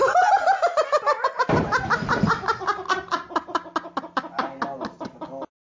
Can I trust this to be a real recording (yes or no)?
yes